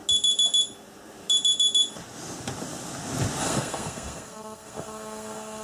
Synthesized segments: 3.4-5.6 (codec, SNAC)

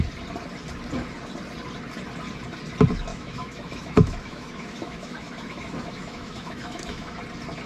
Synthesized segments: 3.1-7.2 (autoencoder, DAC-VAE)

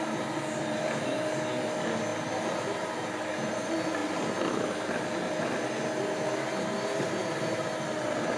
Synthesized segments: none

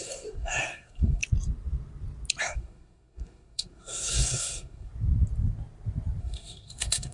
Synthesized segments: 0.0-1.2 (codec, SNAC); 2.4-4.9; 6.2-7.1